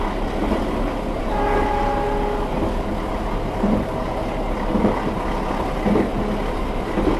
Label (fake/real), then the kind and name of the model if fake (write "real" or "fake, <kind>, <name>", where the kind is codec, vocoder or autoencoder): real